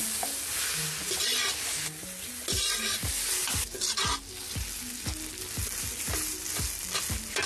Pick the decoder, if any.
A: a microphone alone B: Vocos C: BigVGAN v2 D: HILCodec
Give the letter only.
A